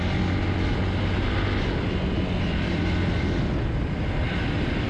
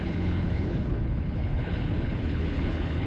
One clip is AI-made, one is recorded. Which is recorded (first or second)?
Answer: first